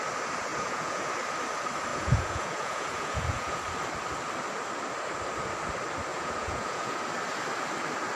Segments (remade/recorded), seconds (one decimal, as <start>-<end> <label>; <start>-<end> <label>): 0.0-0.5 recorded; 0.5-1.1 remade; 1.1-1.9 recorded; 1.9-3.6 remade; 3.6-6.1 recorded; 6.1-7.0 remade; 7.0-8.2 recorded